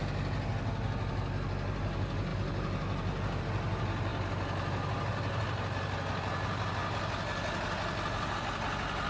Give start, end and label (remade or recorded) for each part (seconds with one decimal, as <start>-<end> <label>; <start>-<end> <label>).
0.0-9.1 recorded